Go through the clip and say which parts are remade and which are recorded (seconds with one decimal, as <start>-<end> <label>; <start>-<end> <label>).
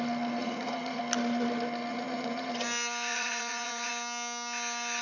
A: 0.0-0.4 recorded; 0.4-1.0 remade; 1.0-1.9 recorded; 1.9-2.5 remade; 2.5-3.1 recorded; 3.1-3.9 remade; 3.9-5.0 recorded